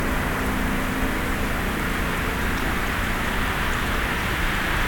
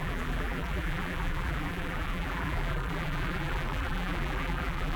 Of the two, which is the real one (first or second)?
first